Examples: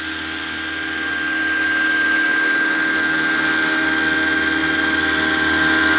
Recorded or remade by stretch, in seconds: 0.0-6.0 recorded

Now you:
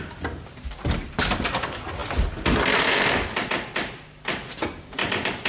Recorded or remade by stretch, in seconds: 0.0-5.5 recorded